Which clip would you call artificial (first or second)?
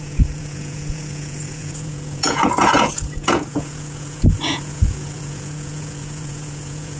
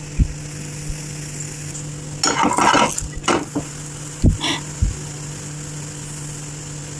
first